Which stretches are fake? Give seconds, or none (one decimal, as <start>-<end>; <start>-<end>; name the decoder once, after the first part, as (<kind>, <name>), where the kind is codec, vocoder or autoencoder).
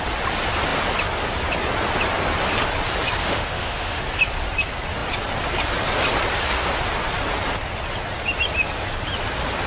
3.2-4.0 (autoencoder, DAC-VAE)